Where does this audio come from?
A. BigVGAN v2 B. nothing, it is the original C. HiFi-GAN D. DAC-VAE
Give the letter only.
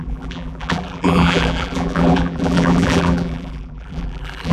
A